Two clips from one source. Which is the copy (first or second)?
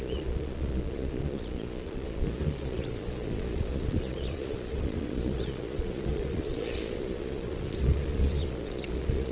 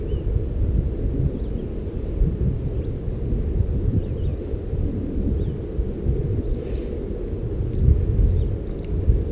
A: first